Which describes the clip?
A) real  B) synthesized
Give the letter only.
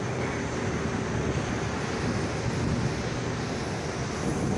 A